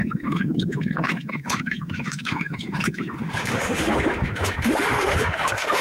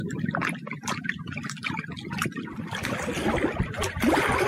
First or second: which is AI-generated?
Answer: first